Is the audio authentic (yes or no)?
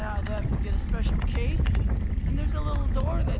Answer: yes